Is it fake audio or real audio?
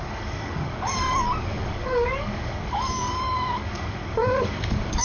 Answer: fake